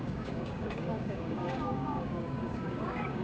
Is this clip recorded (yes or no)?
no